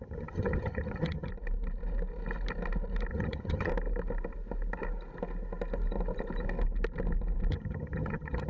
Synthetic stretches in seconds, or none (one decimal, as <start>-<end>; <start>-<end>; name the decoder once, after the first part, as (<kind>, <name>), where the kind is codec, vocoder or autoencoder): 0.0-1.3 (vocoder, HiFi-GAN); 3.1-3.7; 7.5-8.5